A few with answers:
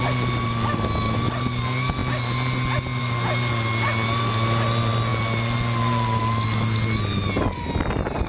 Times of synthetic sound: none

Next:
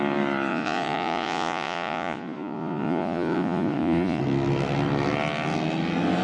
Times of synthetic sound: 0.5-4.2 (vocoder, Vocos)

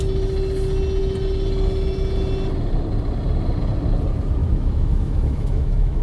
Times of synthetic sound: 4.4-6.0 (autoencoder, DAC-VAE)